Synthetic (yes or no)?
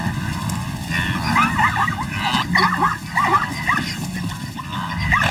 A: no